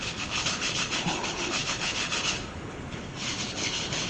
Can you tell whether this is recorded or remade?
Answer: remade